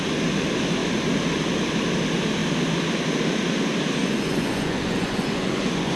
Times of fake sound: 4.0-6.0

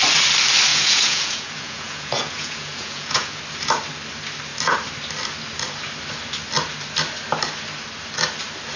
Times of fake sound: 0.7-3.4

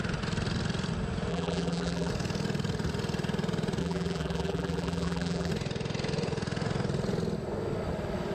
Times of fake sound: 1.3-2.1; 3.8-5.5

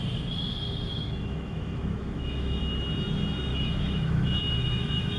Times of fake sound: 0.9-2.6; 3.5-5.2

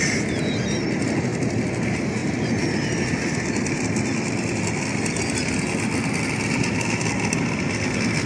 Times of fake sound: none

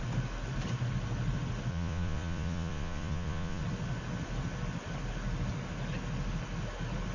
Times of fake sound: 1.7-3.6